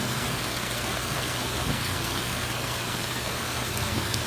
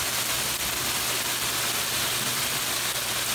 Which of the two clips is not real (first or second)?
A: first